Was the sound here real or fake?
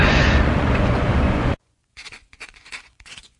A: fake